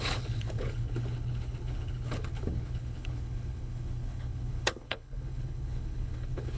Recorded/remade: remade